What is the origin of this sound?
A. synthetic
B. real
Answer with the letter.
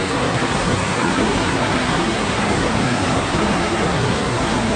A